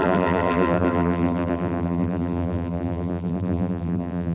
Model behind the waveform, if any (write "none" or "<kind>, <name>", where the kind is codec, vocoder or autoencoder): vocoder, BigVGAN v2